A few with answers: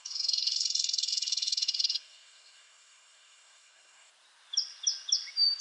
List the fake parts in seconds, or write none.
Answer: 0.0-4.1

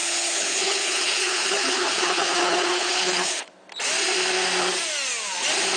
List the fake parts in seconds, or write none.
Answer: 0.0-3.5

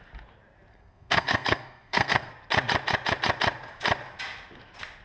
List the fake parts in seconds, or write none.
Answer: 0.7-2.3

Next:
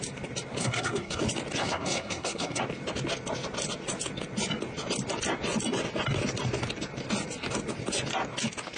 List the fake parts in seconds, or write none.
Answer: 0.6-1.2; 1.6-2.6